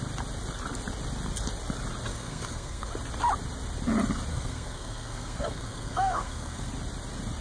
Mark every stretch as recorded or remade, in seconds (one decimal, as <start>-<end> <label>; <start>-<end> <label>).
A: 0.0-2.1 recorded; 2.1-2.9 remade; 2.9-4.3 recorded; 4.3-6.7 remade; 6.7-7.4 recorded